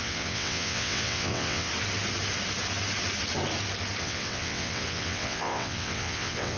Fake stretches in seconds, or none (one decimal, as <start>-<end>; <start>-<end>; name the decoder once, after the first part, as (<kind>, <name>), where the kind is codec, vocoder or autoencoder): 0.0-1.7 (vocoder, WaveNeXt); 4.0-6.6